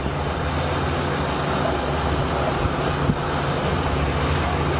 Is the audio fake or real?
real